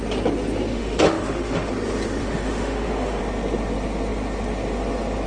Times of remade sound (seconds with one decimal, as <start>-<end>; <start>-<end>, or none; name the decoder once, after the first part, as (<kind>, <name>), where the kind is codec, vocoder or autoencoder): 0.7-1.7 (autoencoder, DAC-VAE); 2.2-3.2